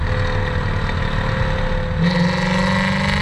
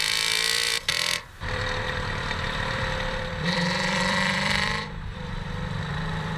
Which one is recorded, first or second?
first